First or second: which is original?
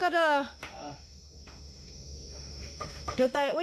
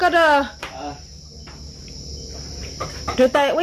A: second